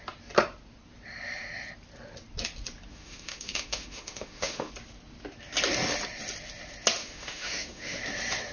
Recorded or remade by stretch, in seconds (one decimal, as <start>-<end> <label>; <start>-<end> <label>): 0.0-2.9 recorded; 2.9-4.7 remade; 4.7-7.0 recorded; 7.0-8.0 remade; 8.0-8.5 recorded